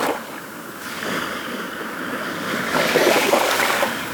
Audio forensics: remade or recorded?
remade